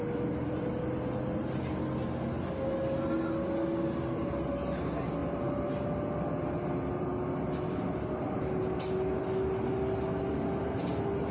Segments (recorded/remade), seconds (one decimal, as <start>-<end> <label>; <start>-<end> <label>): 0.0-11.3 recorded